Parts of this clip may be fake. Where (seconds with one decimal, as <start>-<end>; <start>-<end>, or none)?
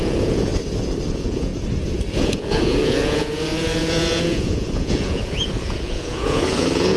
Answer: 0.0-0.5; 1.1-1.5; 2.1-7.0